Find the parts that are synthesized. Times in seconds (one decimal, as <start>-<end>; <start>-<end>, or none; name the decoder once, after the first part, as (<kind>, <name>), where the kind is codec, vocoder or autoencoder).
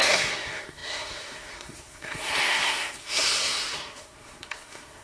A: 0.0-5.0 (codec, SNAC)